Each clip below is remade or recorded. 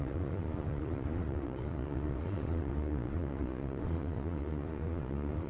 remade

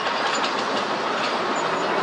recorded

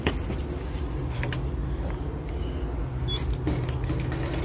recorded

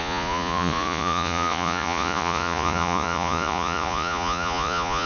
remade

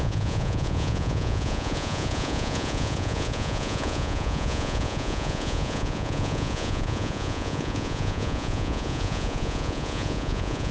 remade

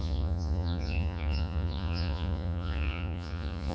remade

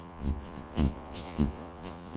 remade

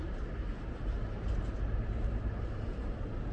recorded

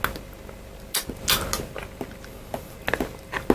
recorded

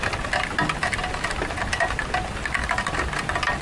recorded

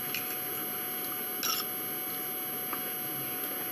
recorded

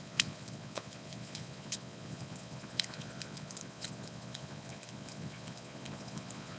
remade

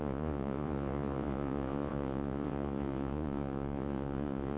remade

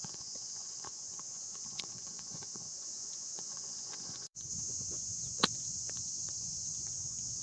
remade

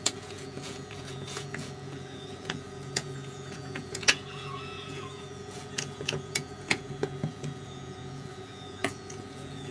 remade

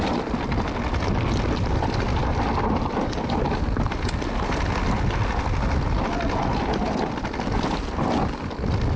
recorded